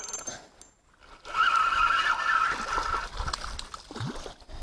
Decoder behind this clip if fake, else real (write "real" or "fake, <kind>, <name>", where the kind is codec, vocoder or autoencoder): real